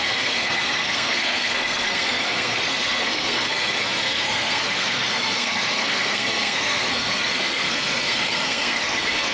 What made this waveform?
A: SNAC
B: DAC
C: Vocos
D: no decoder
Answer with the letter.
A